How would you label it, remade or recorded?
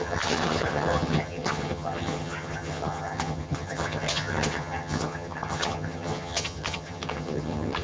remade